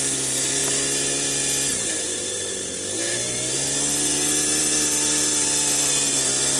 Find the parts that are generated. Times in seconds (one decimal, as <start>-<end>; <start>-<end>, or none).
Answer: none